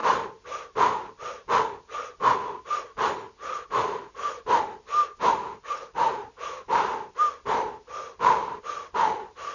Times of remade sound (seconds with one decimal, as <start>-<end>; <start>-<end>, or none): 5.3-6.3